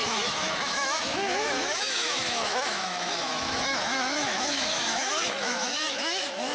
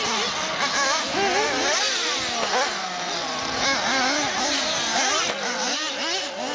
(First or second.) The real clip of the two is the second